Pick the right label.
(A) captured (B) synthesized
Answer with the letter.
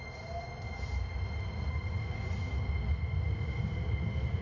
A